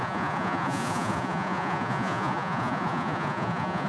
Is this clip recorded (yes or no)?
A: no